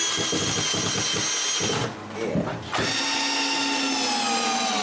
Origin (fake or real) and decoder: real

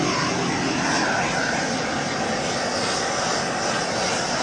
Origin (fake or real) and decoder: real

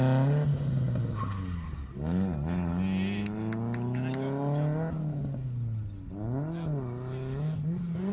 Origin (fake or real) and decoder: real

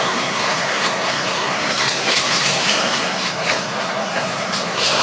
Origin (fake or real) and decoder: fake, codec, SNAC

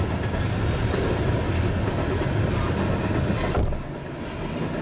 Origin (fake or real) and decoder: real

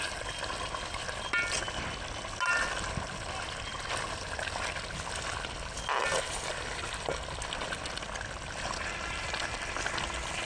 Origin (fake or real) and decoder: real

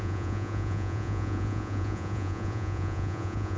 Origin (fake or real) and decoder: fake, vocoder, Vocos